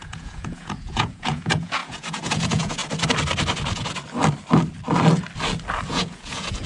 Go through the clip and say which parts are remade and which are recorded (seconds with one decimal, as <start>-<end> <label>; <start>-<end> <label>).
0.0-2.8 remade; 2.8-5.9 recorded; 5.9-6.7 remade